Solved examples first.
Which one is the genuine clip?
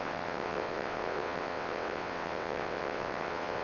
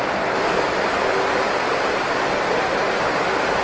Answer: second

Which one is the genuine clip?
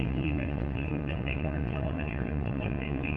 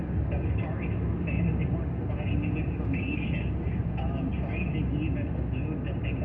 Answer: second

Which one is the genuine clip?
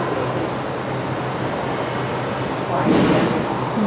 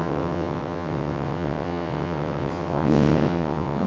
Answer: first